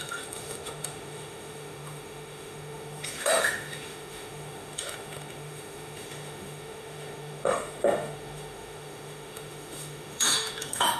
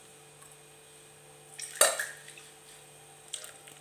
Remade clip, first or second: first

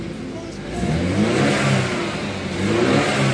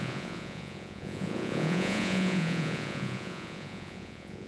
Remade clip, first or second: second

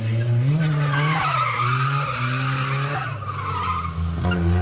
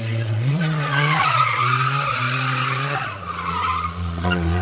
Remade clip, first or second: second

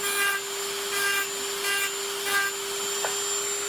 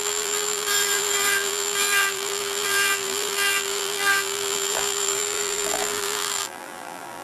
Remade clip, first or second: second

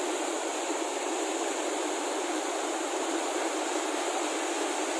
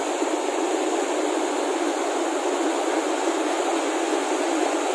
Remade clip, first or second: second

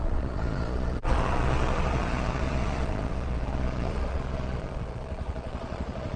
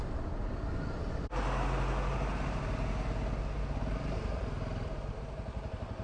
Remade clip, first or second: first